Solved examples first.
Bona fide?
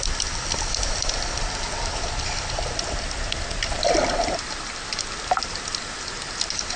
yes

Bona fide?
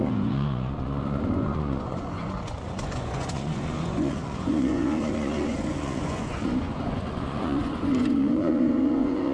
no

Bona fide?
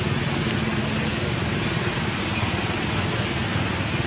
yes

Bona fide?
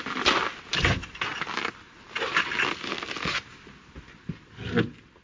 yes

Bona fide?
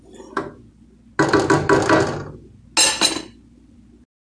yes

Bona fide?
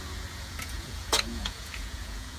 no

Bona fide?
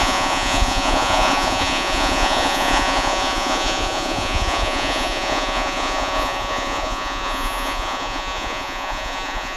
no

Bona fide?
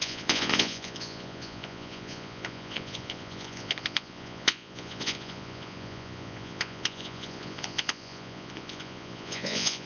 no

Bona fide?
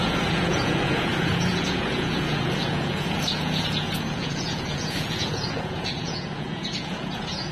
no